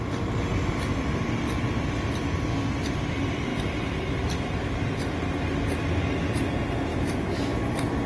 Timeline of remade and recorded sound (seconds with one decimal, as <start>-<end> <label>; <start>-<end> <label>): 0.0-6.9 recorded; 6.9-8.1 remade